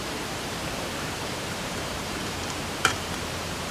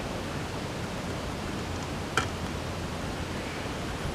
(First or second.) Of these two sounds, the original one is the second